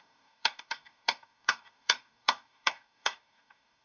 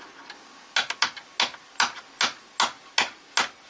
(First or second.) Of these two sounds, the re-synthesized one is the first